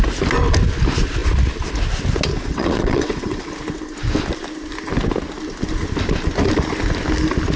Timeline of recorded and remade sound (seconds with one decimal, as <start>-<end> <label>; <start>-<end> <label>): 0.0-2.3 recorded; 2.3-3.5 remade; 3.5-7.6 recorded